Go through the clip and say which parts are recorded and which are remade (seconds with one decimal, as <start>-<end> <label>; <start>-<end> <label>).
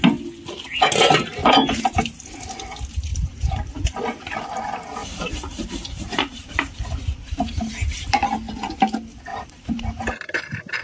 0.0-1.4 recorded; 1.4-2.2 remade; 2.2-3.1 recorded; 3.1-4.2 remade; 4.2-5.0 recorded; 5.0-7.7 remade; 7.7-9.3 recorded; 9.3-10.4 remade; 10.4-10.8 recorded